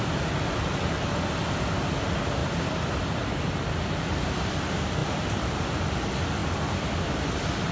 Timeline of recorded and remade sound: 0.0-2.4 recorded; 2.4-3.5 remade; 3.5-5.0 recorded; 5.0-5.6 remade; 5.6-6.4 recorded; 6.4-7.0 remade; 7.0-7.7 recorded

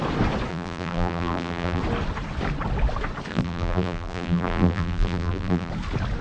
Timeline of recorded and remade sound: 0.0-0.5 recorded; 0.5-1.8 remade; 1.8-3.3 recorded; 3.3-5.7 remade; 5.7-6.2 recorded

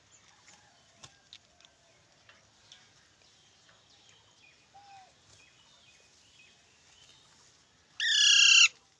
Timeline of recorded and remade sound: 0.0-9.0 recorded